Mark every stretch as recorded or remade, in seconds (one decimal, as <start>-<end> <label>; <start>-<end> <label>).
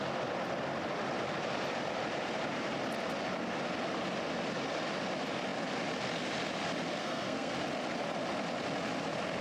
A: 0.0-7.0 recorded; 7.0-7.5 remade; 7.5-9.4 recorded